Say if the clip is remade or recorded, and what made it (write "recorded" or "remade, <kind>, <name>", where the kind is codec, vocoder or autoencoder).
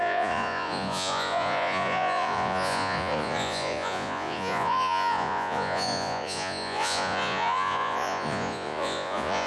remade, vocoder, Vocos